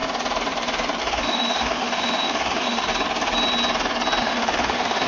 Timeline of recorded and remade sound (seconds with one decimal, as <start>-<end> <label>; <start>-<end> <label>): 0.0-1.0 recorded; 1.0-2.9 remade; 2.9-4.2 recorded; 4.2-5.1 remade